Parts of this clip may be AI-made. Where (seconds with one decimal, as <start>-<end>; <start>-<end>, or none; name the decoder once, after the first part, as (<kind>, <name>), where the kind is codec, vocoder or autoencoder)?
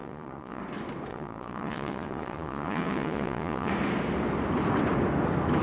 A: 0.0-0.6 (vocoder, Vocos); 1.1-3.7